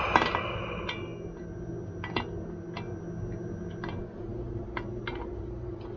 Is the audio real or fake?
real